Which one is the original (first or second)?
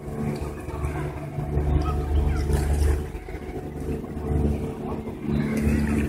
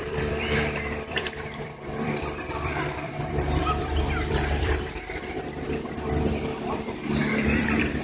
first